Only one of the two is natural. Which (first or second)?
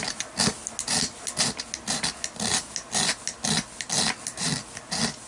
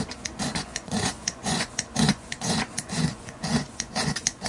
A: first